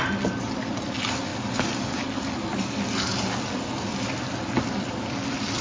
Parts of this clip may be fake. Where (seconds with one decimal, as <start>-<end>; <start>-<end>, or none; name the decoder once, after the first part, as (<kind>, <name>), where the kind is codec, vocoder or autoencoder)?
none